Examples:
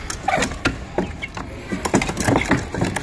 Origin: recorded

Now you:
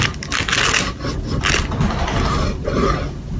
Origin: recorded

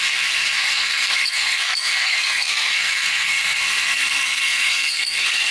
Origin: remade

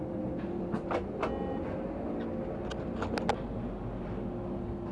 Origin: recorded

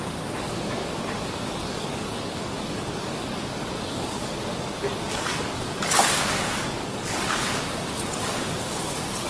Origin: remade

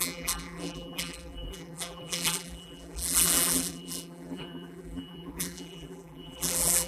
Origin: remade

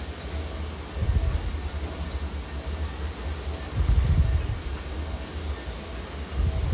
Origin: recorded